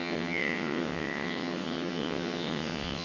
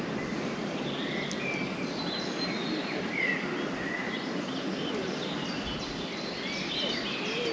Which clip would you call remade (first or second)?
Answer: first